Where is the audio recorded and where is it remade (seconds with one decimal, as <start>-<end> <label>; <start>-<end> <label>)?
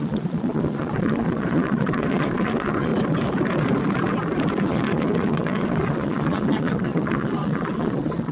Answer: 0.0-2.9 remade; 2.9-4.6 recorded; 4.6-8.3 remade